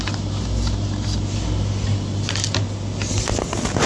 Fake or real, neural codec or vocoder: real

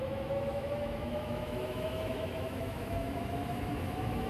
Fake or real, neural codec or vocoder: fake, autoencoder, DAC-VAE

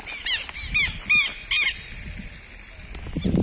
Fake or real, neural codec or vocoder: real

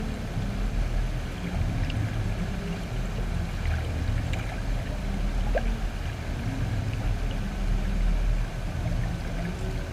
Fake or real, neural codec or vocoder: real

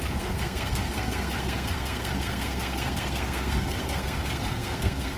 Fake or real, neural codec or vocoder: fake, codec, SNAC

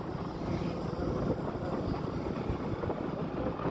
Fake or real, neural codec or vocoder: real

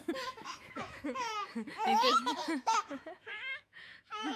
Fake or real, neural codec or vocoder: fake, autoencoder, DAC-VAE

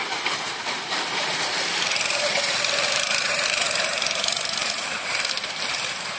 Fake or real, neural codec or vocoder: fake, vocoder, BigVGAN v2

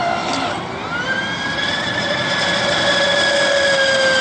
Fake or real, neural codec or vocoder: real